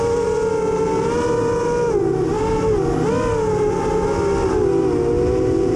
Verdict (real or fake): real